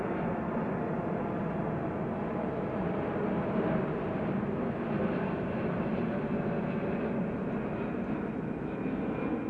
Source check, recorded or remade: recorded